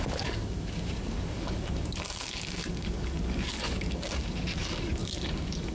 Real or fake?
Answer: fake